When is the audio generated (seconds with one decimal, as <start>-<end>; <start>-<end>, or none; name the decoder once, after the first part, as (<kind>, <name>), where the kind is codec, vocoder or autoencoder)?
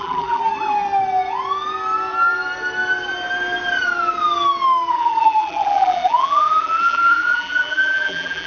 0.0-0.4 (vocoder, BigVGAN v2); 4.9-8.5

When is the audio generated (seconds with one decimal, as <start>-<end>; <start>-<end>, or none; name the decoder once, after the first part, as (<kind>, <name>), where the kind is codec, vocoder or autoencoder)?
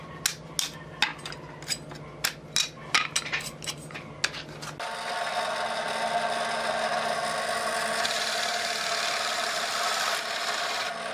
none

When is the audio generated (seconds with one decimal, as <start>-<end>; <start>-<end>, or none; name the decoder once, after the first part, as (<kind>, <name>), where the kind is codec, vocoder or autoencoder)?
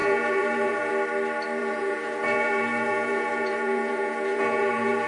0.0-0.9 (vocoder, Vocos); 1.6-5.1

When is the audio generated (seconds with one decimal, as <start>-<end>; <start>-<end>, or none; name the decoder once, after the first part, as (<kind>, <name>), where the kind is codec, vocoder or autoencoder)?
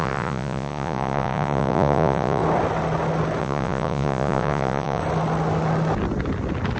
0.0-2.4 (vocoder, Vocos); 3.4-5.0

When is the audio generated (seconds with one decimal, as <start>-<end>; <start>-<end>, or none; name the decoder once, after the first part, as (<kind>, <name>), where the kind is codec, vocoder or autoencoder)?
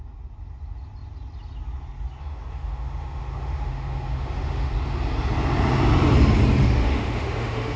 2.2-4.7 (autoencoder, DAC-VAE); 6.6-7.8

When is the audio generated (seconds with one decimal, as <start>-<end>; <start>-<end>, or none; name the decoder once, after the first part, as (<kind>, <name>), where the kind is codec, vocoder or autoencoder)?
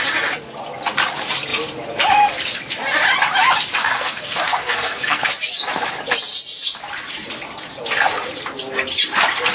3.8-5.3 (codec, SNAC)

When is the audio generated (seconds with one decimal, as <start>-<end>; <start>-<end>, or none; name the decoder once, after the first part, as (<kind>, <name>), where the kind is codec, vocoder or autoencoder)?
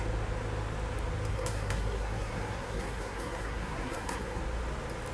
1.3-4.4 (codec, SNAC)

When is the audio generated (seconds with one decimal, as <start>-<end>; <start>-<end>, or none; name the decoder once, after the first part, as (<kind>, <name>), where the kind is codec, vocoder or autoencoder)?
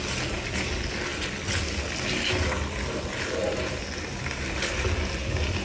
none